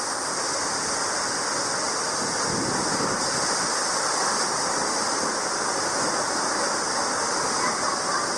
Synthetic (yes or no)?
no